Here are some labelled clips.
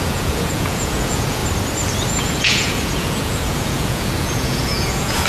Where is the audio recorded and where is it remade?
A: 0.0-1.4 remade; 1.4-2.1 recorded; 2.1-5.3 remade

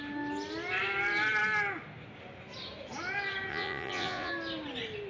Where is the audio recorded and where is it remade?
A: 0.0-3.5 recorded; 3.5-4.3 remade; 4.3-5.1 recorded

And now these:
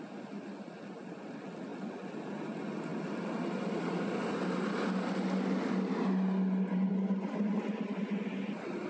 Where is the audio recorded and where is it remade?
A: 0.0-8.9 recorded

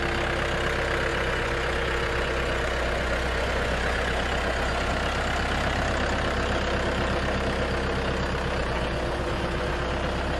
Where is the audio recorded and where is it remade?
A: 0.0-1.1 recorded; 1.1-4.9 remade; 4.9-8.6 recorded; 8.6-9.9 remade; 9.9-10.4 recorded

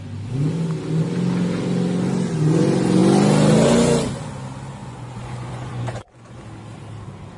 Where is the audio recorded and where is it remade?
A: 0.0-4.8 recorded; 4.8-6.4 remade; 6.4-7.4 recorded

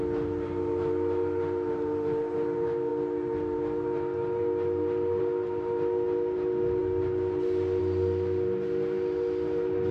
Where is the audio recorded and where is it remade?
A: 0.0-9.9 recorded